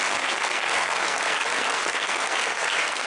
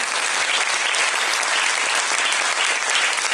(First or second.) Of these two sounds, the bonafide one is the second